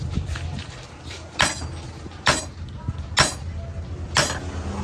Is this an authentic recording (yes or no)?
yes